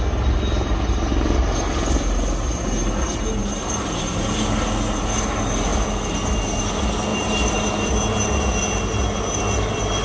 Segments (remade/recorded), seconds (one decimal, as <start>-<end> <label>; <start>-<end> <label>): 0.0-3.4 recorded; 3.4-4.2 remade; 4.2-7.1 recorded; 7.1-7.7 remade; 7.7-10.0 recorded